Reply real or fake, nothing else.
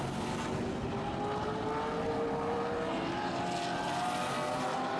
real